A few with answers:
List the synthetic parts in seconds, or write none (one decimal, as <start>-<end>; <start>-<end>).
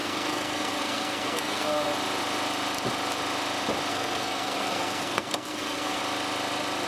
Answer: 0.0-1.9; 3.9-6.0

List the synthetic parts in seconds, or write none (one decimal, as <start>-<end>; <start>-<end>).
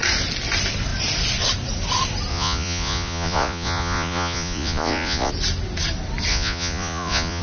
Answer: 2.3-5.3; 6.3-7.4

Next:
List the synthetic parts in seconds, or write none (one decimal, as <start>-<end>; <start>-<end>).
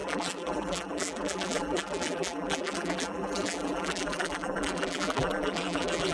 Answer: 0.0-6.1